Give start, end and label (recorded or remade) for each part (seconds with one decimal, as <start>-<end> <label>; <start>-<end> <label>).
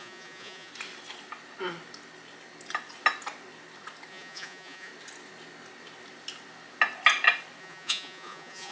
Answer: 0.0-0.7 remade; 0.7-4.1 recorded; 4.1-4.9 remade; 4.9-7.6 recorded; 7.6-8.7 remade